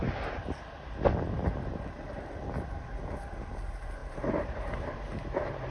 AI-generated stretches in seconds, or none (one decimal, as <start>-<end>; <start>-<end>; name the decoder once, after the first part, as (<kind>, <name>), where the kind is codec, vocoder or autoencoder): 4.0-5.7 (vocoder, BigVGAN v2)